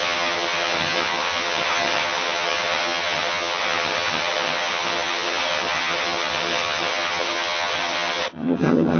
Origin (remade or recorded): remade